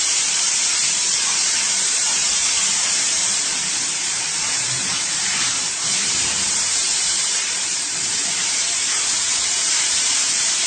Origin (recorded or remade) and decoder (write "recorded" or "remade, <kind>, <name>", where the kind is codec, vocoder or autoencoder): remade, vocoder, BigVGAN v2